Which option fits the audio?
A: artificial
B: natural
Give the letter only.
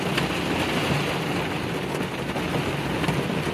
B